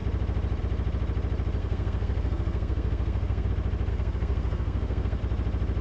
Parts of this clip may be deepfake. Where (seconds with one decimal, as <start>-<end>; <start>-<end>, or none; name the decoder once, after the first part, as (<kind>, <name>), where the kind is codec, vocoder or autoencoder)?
1.6-3.5 (codec, SNAC); 3.9-5.2